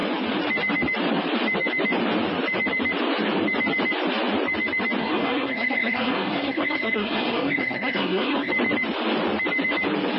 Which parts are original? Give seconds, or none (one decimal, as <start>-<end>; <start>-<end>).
0.0-5.0; 8.5-10.2